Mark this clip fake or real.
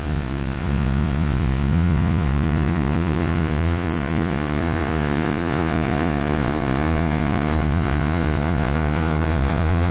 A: fake